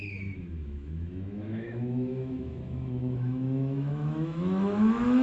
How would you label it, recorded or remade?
remade